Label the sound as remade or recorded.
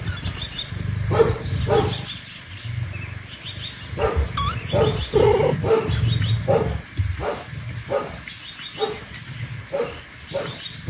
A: recorded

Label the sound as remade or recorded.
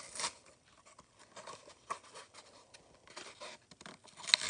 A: recorded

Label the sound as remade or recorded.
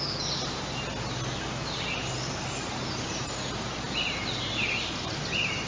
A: recorded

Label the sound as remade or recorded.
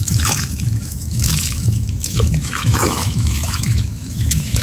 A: remade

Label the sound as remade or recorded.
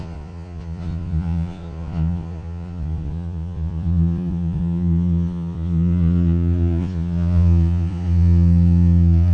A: remade